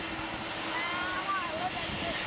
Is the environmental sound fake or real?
real